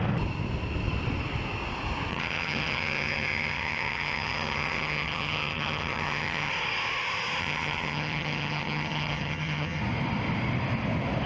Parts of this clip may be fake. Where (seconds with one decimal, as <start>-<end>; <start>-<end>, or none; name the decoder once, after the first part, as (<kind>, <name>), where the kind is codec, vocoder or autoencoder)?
2.1-6.5 (vocoder, HiFi-GAN); 7.4-9.8